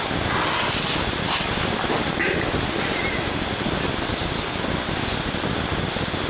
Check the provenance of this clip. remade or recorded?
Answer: recorded